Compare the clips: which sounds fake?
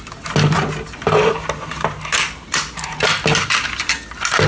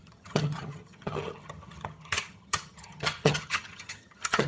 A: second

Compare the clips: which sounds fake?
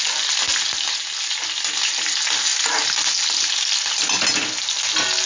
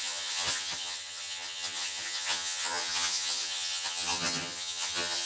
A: second